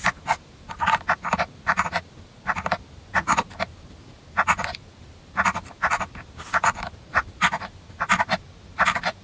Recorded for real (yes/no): yes